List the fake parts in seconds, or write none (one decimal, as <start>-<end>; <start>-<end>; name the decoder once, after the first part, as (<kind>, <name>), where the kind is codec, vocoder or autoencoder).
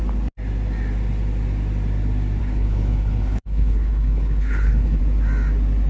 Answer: 2.4-5.0 (codec, HILCodec)